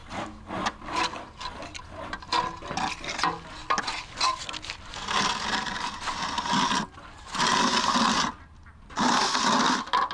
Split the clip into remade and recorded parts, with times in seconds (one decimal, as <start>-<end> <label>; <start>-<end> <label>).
0.0-10.1 recorded